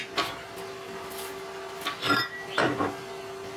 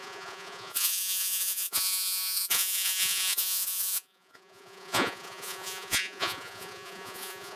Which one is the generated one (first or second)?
second